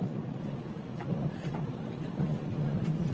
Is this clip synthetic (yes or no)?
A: yes